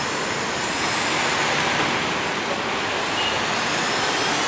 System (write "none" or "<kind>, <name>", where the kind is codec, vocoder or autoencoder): none